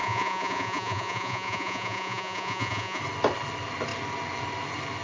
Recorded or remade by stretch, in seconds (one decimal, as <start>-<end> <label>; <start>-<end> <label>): 0.0-3.0 remade; 3.0-5.0 recorded